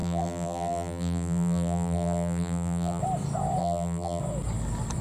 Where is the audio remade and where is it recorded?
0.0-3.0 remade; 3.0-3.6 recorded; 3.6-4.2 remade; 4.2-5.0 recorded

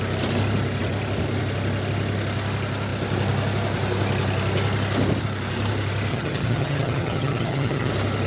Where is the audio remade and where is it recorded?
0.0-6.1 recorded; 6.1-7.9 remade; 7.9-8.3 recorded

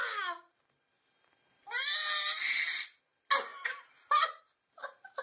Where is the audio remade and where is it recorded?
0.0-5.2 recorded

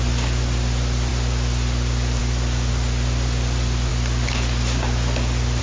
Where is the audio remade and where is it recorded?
0.0-5.6 recorded

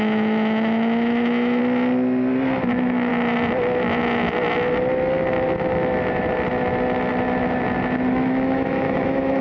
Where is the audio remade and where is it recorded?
0.0-1.6 remade; 1.6-2.7 recorded; 2.7-3.1 remade; 3.1-8.1 recorded; 8.1-9.4 remade